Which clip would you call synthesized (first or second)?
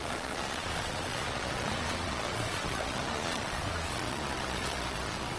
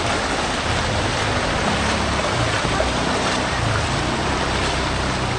first